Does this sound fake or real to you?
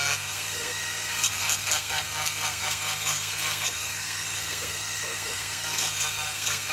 fake